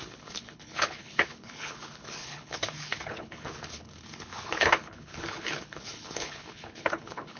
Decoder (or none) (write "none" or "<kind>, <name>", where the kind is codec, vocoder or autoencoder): codec, HILCodec